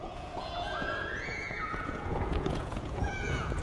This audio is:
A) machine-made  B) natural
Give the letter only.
A